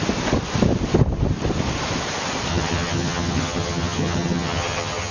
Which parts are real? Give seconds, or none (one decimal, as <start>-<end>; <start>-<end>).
0.0-2.5